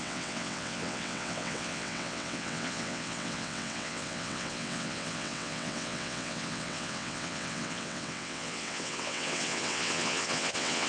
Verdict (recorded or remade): remade